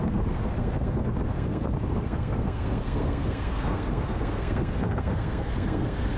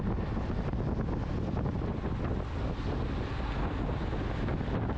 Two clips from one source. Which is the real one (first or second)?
second